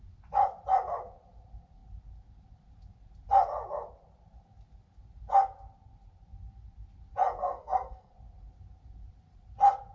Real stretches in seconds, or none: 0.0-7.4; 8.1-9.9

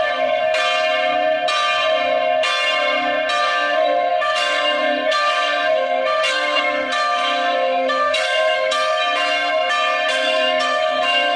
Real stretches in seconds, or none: 0.4-3.4; 9.0-10.1